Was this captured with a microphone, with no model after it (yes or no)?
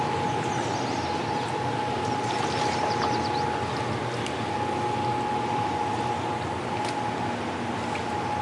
yes